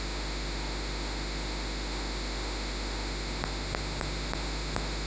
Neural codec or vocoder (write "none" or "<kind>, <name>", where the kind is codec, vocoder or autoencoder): autoencoder, DAC-VAE